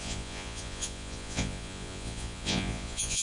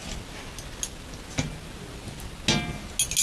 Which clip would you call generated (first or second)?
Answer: first